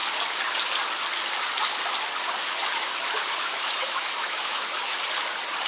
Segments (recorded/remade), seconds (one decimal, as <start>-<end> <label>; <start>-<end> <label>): 0.0-3.4 recorded; 3.4-4.9 remade; 4.9-5.7 recorded